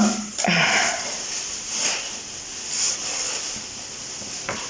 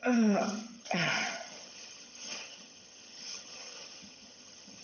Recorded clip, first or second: first